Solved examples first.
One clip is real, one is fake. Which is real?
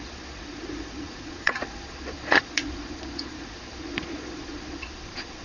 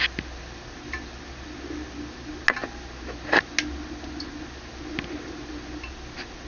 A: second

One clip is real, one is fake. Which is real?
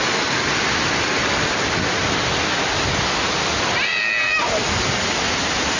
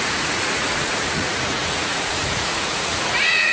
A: first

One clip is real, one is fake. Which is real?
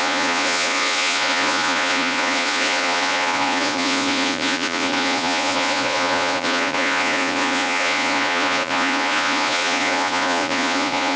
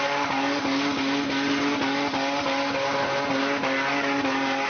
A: second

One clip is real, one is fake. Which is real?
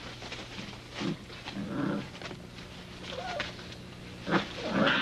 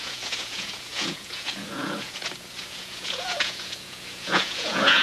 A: first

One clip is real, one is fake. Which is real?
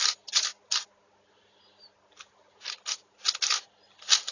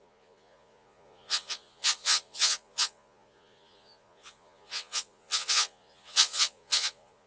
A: first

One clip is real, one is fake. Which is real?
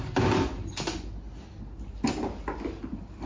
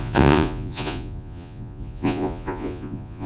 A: first